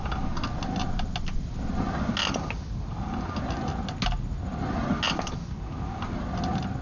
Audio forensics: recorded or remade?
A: recorded